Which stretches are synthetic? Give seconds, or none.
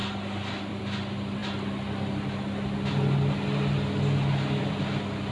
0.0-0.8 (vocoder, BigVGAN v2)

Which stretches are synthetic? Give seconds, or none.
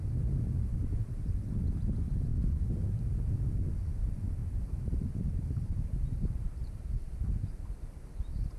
2.3-2.9 (vocoder, BigVGAN v2); 4.4-8.1